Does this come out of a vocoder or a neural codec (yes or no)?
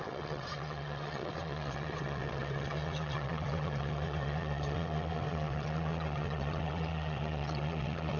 yes